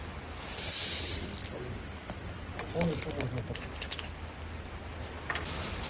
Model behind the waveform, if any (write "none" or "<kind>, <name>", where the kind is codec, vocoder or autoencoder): none